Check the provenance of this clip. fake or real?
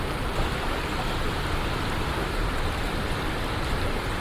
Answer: real